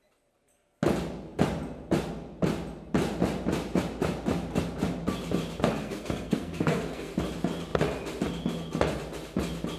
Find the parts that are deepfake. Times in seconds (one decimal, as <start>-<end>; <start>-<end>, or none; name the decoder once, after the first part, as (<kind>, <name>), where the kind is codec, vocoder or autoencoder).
5.8-7.1 (codec, SNAC)